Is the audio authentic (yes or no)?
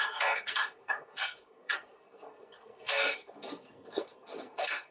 no